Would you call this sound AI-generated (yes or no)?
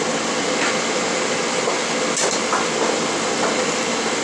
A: yes